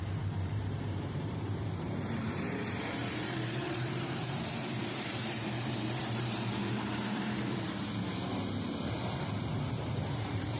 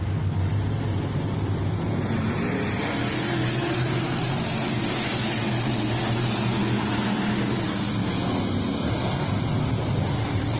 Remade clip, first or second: first